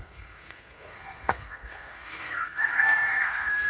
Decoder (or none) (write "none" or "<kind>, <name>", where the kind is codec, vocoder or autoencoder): codec, SNAC